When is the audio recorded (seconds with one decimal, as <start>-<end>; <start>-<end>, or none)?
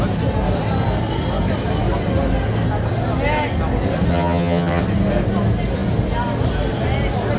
0.0-4.1; 4.8-7.4